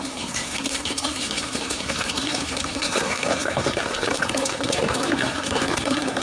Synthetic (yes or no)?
yes